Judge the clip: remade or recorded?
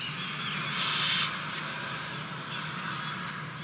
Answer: recorded